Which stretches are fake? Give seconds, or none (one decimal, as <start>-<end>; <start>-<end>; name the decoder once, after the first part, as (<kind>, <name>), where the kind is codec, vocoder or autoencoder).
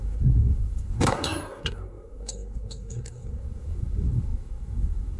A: 0.0-5.2 (codec, SNAC)